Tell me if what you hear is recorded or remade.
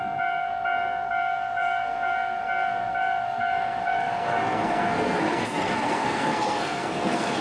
remade